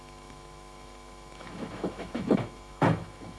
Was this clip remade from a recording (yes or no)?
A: yes